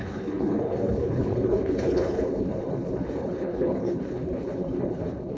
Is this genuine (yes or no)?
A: no